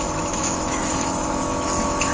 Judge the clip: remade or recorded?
remade